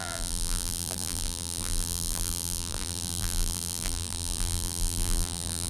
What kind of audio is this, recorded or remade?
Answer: remade